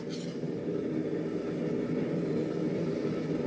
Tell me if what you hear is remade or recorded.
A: recorded